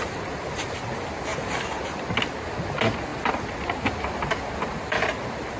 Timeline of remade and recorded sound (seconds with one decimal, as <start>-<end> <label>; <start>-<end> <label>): 0.0-5.6 recorded